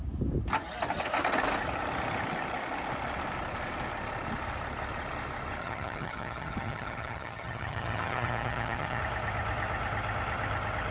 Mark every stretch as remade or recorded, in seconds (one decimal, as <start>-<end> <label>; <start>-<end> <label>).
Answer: 0.0-5.6 recorded; 5.6-9.0 remade; 9.0-10.9 recorded